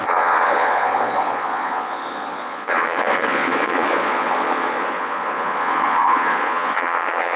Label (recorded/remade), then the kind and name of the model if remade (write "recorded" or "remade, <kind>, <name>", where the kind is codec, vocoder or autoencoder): remade, vocoder, Vocos